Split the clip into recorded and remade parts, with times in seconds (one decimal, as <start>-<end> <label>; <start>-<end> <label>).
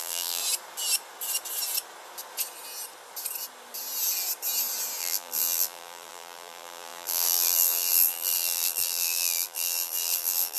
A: 0.0-0.4 remade; 0.4-5.0 recorded; 5.0-10.6 remade